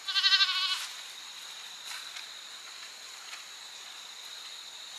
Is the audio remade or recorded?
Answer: recorded